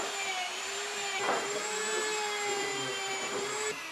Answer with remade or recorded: remade